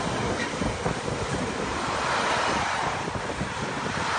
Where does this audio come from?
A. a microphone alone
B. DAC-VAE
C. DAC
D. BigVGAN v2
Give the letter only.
A